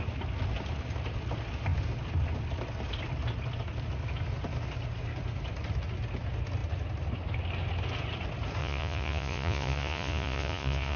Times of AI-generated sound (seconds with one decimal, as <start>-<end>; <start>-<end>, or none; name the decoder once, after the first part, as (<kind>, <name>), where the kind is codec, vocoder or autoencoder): 8.6-11.0 (vocoder, Vocos)